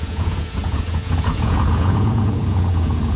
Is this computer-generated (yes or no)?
yes